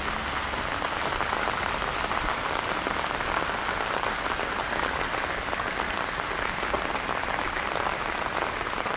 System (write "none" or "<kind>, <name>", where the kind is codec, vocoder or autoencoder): none